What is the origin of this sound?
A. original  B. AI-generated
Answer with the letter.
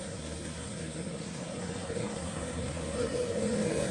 B